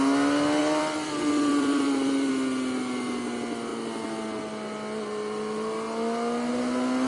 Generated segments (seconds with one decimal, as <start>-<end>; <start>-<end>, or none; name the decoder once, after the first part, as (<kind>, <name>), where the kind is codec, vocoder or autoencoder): 0.6-2.3 (vocoder, BigVGAN v2)